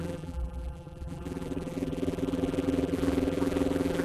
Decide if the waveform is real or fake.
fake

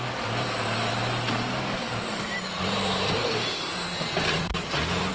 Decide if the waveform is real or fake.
fake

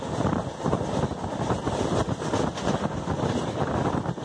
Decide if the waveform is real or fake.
real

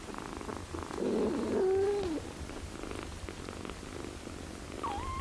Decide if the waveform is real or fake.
real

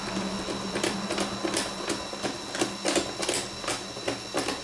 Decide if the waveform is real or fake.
real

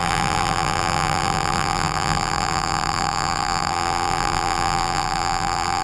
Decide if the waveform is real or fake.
fake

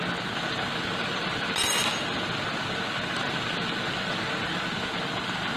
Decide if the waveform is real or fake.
real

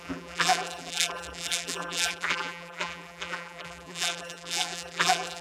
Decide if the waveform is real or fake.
fake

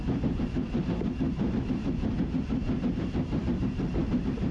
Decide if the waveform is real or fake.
fake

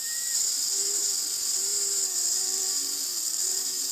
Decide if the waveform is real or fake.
fake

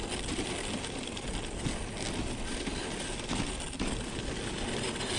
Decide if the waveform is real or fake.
real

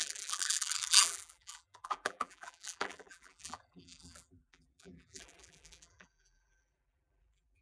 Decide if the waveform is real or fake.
fake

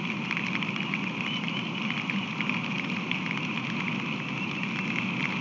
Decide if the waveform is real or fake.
real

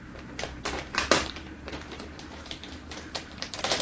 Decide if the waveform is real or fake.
fake